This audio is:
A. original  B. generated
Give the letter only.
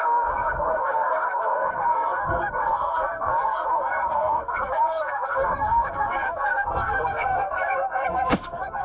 B